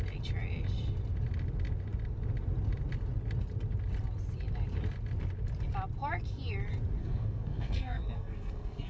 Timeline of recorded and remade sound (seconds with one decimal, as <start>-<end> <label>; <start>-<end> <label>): 0.0-7.0 recorded; 7.0-8.9 remade